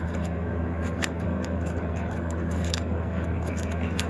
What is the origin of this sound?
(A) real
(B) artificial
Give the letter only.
B